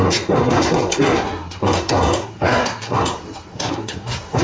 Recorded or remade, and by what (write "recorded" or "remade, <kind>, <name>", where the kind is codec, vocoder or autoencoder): remade, codec, SNAC